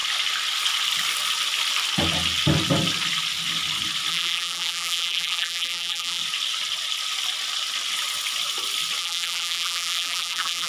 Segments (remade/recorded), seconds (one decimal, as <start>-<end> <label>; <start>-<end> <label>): 0.0-4.1 recorded; 4.1-6.2 remade; 6.2-9.0 recorded; 9.0-10.7 remade